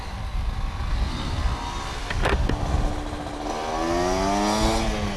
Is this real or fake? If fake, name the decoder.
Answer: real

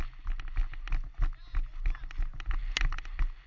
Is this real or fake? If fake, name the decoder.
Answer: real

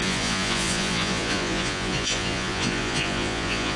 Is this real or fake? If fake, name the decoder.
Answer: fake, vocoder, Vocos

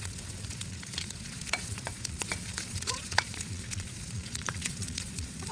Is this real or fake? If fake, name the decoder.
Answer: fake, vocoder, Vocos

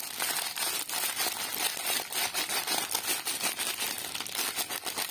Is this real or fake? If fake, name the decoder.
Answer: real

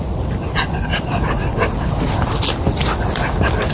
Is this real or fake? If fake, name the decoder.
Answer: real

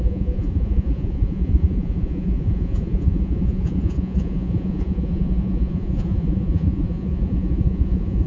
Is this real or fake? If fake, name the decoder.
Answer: fake, vocoder, Vocos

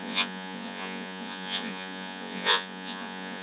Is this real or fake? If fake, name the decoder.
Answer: fake, vocoder, Vocos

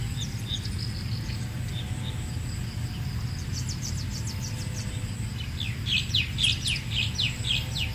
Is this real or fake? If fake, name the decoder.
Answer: real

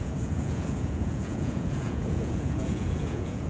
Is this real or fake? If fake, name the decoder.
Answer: fake, vocoder, Vocos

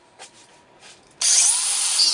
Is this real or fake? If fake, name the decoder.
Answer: real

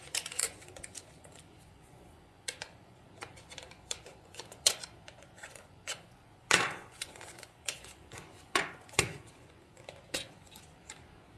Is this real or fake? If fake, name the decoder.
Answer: fake, vocoder, Vocos